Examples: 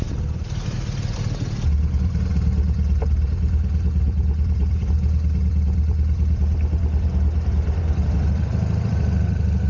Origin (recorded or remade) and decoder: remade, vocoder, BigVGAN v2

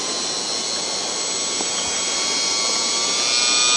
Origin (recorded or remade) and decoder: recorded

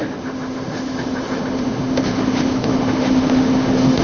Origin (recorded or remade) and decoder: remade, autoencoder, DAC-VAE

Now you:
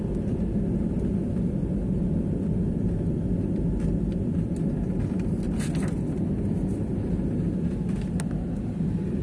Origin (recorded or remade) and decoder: recorded